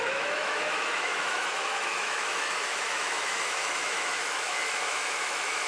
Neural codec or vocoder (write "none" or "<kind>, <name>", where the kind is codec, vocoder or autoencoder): autoencoder, DAC-VAE